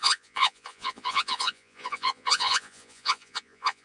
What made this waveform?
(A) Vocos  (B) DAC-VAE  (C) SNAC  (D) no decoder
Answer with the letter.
A